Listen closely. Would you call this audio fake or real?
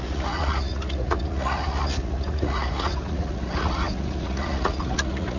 fake